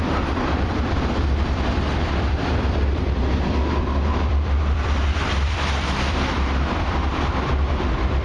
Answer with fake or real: fake